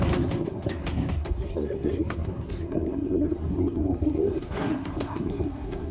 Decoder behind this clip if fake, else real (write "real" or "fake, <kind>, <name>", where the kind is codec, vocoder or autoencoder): fake, codec, SNAC